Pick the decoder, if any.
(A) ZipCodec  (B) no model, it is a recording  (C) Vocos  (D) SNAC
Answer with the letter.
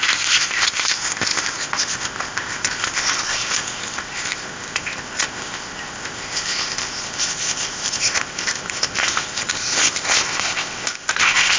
A